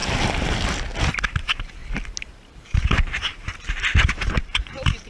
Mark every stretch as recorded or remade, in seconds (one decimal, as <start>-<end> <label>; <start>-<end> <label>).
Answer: 0.0-0.5 recorded; 0.5-0.9 remade; 0.9-1.4 recorded; 1.4-1.8 remade; 1.8-2.5 recorded; 2.5-5.1 remade

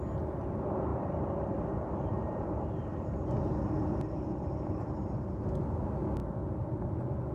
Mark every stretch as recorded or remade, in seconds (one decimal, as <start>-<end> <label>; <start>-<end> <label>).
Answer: 0.0-0.9 recorded; 0.9-4.7 remade; 4.7-7.3 recorded

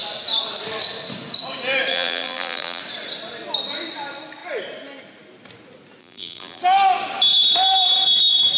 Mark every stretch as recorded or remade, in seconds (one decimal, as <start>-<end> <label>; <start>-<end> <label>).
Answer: 0.0-1.9 recorded; 1.9-2.8 remade; 2.8-6.0 recorded; 6.0-6.6 remade; 6.6-8.6 recorded